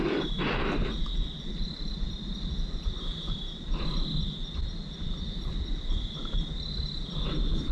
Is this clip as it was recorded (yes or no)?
yes